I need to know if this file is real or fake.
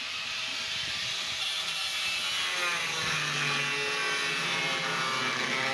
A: real